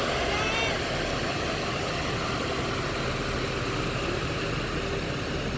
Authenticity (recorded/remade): recorded